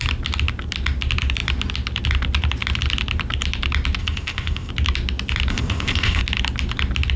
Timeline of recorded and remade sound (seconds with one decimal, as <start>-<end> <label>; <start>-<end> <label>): 0.0-4.0 recorded; 4.0-4.7 remade; 4.7-5.5 recorded; 5.5-6.2 remade; 6.2-7.2 recorded